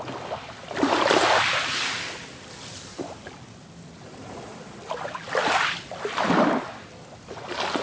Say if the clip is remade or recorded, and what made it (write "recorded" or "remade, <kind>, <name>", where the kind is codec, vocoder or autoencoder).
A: recorded